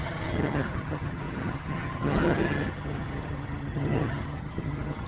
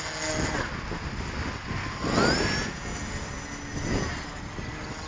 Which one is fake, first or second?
first